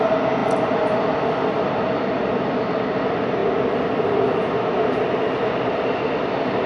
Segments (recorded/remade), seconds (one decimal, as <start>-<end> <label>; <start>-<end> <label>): 0.0-6.7 recorded